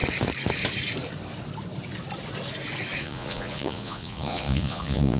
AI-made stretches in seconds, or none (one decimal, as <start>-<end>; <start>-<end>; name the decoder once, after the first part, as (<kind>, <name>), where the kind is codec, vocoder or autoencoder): 3.0-5.2 (vocoder, Vocos)